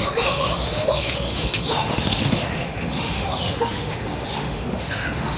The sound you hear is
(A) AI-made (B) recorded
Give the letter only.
A